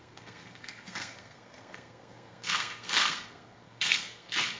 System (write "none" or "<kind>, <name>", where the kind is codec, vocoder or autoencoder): codec, SNAC